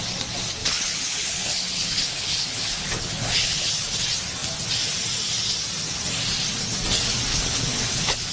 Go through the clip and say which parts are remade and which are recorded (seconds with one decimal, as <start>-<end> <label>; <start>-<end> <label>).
0.0-0.6 recorded; 0.6-3.7 remade; 3.7-7.3 recorded; 7.3-8.3 remade

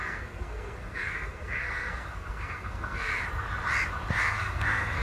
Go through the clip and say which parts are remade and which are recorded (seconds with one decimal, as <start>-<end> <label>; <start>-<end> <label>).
0.0-3.1 remade; 3.1-4.2 recorded; 4.2-5.0 remade

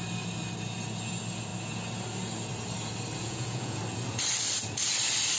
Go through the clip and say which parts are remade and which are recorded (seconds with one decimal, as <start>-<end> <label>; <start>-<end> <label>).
0.0-3.2 recorded; 3.2-3.8 remade; 3.8-5.4 recorded

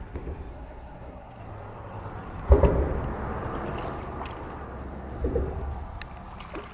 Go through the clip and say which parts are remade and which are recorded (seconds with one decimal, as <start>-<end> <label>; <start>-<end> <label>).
0.0-0.5 recorded; 0.5-1.4 remade; 1.4-6.7 recorded